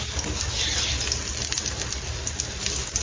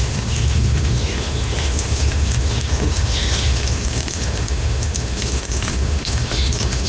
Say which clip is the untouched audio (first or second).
first